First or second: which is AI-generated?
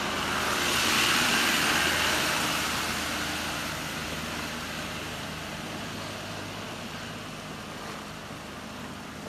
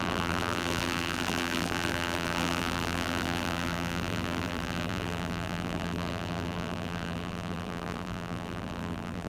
second